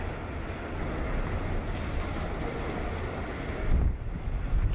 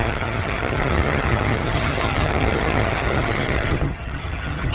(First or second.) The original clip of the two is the first